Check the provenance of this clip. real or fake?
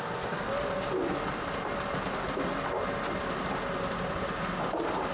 real